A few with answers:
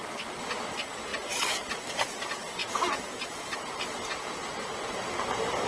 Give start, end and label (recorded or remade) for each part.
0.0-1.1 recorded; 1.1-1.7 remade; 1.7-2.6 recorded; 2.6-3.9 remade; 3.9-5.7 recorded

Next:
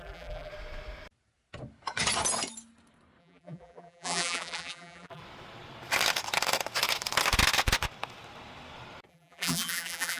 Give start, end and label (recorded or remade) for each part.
0.0-0.5 remade; 0.5-3.2 recorded; 3.2-5.2 remade; 5.2-9.1 recorded; 9.1-10.2 remade

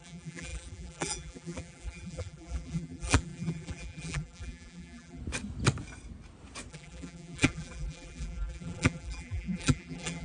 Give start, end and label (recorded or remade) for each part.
0.0-5.2 remade; 5.2-6.7 recorded; 6.7-10.2 remade

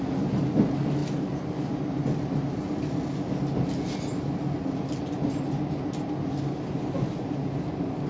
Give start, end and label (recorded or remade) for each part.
0.0-8.1 recorded

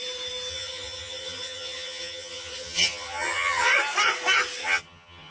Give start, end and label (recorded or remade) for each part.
0.0-0.5 recorded; 0.5-3.7 remade; 3.7-4.6 recorded; 4.6-5.3 remade